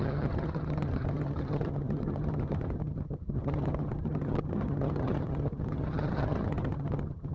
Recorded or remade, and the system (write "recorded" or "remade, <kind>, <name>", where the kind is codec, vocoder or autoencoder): remade, vocoder, HiFi-GAN